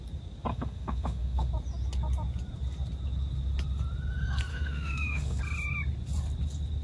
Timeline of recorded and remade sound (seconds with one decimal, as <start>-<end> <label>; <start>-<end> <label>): 0.0-0.5 recorded; 0.5-1.5 remade; 1.5-4.5 recorded; 4.5-5.4 remade; 5.4-6.8 recorded

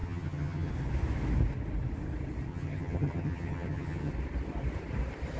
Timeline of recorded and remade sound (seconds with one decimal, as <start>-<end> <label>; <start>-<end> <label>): 0.0-0.7 remade; 0.7-2.5 recorded; 2.5-4.1 remade; 4.1-5.4 recorded

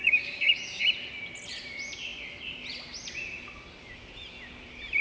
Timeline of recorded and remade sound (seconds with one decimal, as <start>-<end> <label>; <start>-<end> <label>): 0.0-0.8 remade; 0.8-5.0 recorded

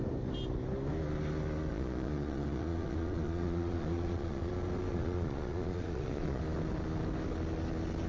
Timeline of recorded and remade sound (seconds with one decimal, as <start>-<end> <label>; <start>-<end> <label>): 0.0-1.7 recorded; 1.7-4.5 remade; 4.5-4.9 recorded; 4.9-6.4 remade; 6.4-8.1 recorded

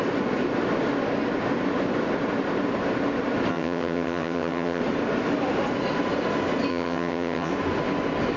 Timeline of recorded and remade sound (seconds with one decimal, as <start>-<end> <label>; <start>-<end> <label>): 0.0-3.5 recorded; 3.5-4.8 remade; 4.8-6.7 recorded; 6.7-7.5 remade; 7.5-8.4 recorded

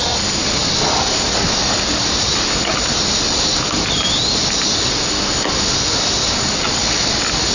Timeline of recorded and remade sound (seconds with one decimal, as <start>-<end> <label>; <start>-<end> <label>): 0.0-7.5 recorded